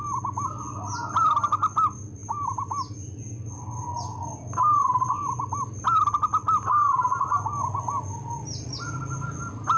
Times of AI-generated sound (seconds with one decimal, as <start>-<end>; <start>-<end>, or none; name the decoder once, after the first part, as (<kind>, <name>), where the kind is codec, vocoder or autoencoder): none